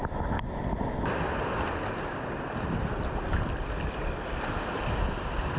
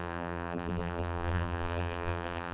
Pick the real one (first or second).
first